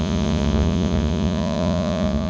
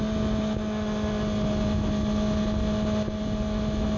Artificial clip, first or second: first